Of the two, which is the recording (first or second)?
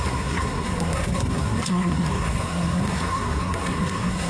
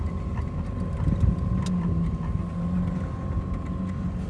second